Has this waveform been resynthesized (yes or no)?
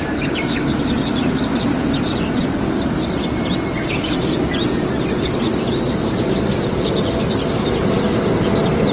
no